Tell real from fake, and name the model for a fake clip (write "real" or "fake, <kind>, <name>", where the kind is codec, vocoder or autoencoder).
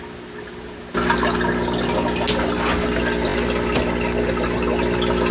real